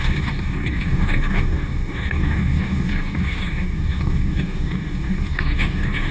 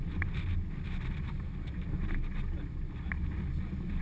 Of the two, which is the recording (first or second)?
second